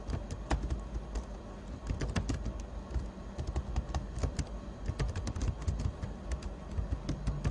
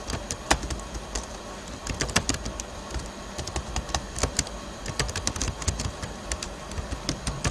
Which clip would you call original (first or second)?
first